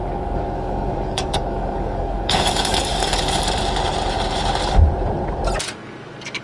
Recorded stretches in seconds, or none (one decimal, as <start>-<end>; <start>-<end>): 3.2-6.4